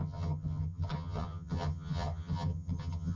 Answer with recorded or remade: remade